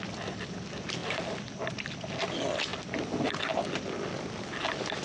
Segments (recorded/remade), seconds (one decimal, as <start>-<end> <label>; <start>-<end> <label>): 0.0-5.0 recorded